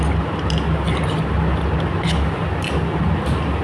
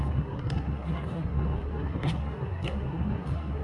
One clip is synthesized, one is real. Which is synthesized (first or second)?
second